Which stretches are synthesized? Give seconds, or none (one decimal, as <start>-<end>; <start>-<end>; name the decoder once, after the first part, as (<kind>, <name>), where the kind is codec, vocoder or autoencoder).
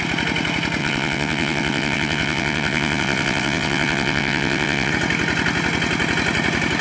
0.8-4.9 (vocoder, WaveNeXt)